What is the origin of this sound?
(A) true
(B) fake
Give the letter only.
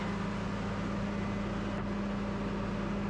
A